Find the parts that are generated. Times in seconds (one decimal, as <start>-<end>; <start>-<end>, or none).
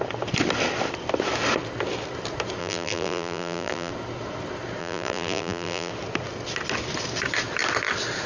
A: 2.6-3.9; 4.8-5.9